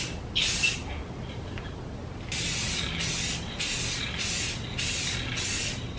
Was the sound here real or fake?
real